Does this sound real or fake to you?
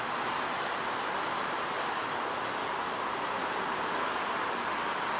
real